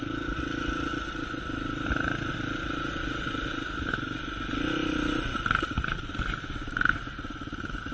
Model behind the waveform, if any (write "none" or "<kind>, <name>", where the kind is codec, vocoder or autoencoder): none